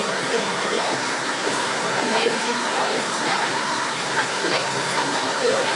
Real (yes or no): no